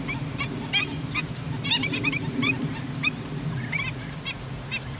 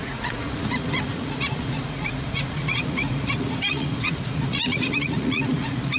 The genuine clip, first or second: first